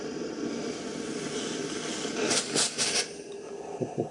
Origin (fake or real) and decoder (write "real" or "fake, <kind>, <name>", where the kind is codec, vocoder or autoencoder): real